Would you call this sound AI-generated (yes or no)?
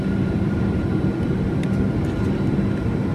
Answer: no